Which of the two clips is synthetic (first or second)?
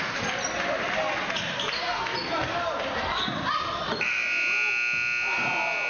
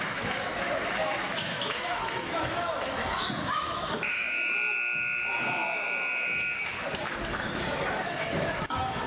second